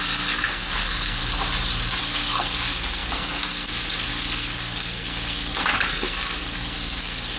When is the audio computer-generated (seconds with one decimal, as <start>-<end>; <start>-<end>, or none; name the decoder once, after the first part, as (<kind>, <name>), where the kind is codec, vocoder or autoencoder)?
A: 0.0-1.2 (codec, SNAC); 2.0-7.4